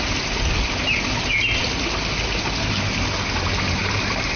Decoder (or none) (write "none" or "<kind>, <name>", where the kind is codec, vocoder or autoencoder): none